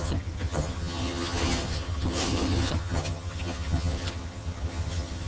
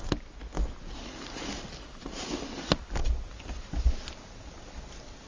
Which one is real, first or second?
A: second